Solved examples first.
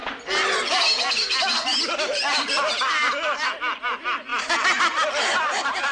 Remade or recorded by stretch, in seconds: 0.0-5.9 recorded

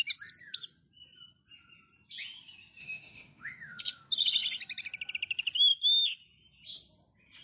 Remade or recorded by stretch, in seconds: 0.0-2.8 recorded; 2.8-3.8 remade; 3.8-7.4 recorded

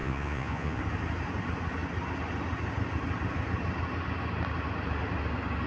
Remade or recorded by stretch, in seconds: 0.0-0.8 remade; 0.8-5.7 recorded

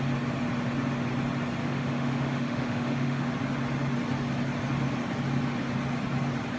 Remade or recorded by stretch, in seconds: 0.0-1.6 recorded; 1.6-3.3 remade; 3.3-6.6 recorded

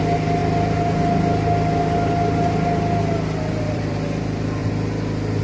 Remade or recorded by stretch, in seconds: 0.0-0.4 remade; 0.4-3.6 recorded; 3.6-4.6 remade; 4.6-5.4 recorded